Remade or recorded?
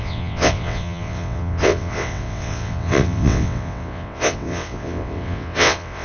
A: remade